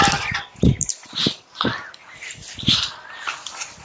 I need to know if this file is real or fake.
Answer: real